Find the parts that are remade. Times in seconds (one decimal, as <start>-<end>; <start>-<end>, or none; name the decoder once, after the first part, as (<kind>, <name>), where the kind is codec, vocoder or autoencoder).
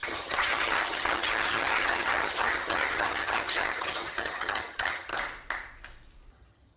0.0-5.1 (vocoder, HiFi-GAN); 6.3-6.8